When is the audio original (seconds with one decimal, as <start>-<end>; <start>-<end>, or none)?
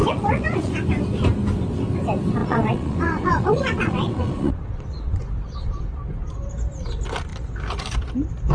0.7-2.4; 6.0-8.5